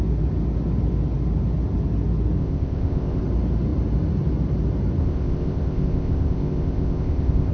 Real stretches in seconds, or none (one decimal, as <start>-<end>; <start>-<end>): 0.0-2.4; 3.2-5.0